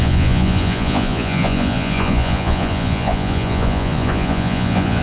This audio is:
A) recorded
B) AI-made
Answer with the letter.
B